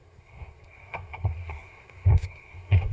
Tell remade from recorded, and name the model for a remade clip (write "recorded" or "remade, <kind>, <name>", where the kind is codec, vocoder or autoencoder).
remade, codec, SNAC